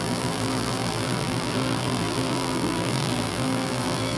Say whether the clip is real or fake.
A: fake